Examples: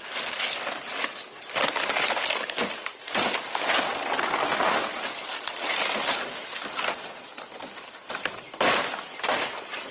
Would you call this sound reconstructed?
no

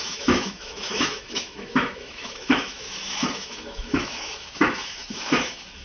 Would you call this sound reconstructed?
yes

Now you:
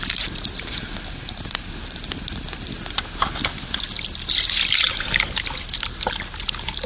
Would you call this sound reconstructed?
no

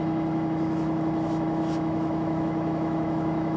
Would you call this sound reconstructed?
yes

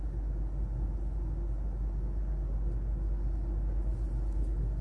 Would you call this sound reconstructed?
no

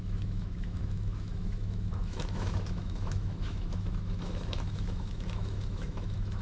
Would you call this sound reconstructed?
yes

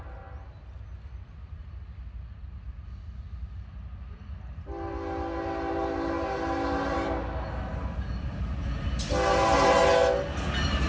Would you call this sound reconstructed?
no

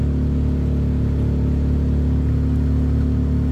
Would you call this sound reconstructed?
no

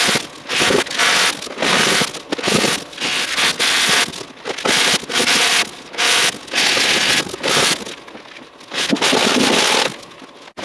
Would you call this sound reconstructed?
no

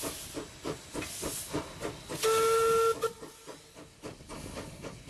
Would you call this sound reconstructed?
no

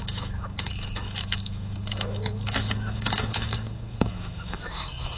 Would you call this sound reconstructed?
yes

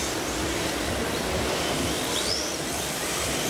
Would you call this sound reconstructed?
no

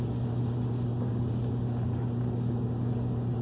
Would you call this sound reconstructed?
no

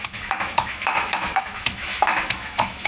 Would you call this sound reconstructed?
yes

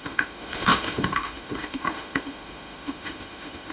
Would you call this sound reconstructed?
yes